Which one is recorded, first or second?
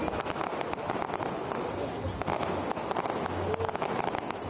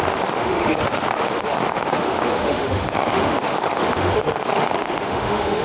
first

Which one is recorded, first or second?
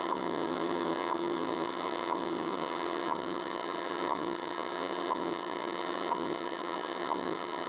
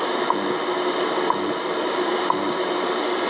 second